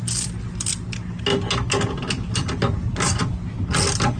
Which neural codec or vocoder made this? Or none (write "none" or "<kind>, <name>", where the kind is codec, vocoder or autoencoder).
none